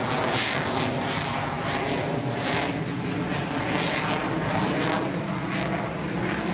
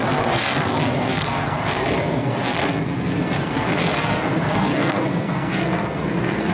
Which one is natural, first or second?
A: first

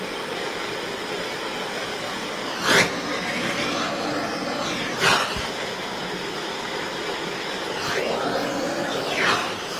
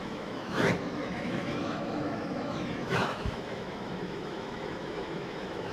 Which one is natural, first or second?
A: first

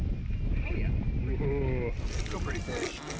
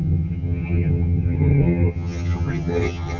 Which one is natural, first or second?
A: first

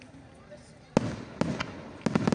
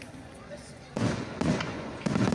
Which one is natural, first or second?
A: first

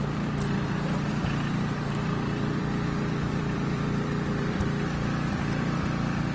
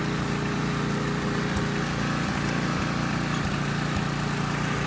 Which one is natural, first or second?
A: second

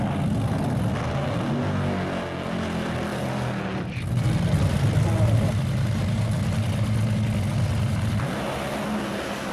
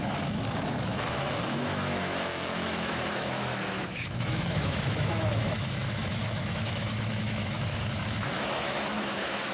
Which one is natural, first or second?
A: first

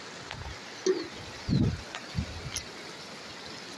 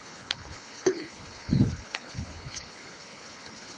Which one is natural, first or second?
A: first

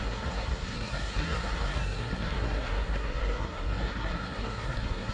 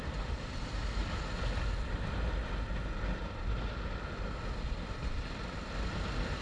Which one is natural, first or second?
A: second